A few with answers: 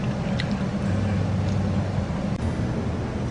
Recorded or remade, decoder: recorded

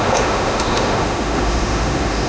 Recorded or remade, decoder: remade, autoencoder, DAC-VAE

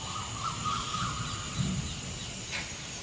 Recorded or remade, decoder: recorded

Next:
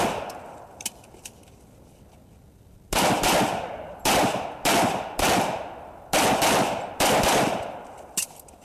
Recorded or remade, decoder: recorded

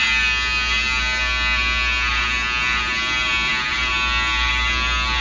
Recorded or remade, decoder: recorded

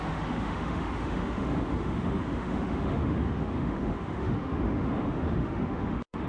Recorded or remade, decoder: remade, autoencoder, DAC-VAE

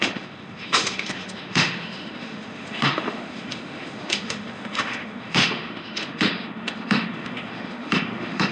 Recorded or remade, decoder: remade, autoencoder, DAC-VAE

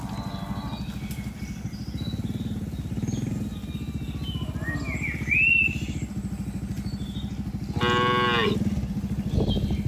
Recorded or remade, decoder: recorded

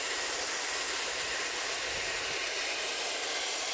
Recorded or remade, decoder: recorded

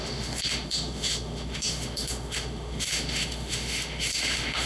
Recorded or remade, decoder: remade, autoencoder, DAC-VAE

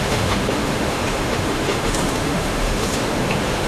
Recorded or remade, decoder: remade, autoencoder, DAC-VAE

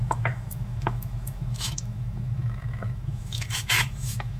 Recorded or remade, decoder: remade, autoencoder, DAC-VAE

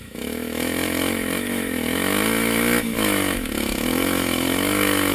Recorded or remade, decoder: remade, autoencoder, DAC-VAE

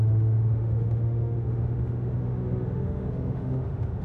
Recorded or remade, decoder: remade, autoencoder, DAC-VAE